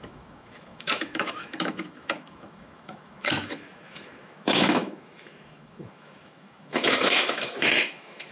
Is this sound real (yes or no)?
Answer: no